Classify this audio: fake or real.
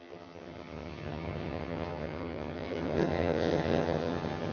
fake